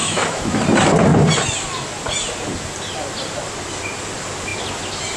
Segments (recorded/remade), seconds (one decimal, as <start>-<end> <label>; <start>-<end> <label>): 0.0-0.6 remade; 0.6-5.2 recorded